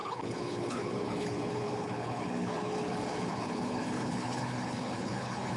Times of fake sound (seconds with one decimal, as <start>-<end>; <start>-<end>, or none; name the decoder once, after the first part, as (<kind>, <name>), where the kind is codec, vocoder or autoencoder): 0.0-5.6 (codec, HILCodec)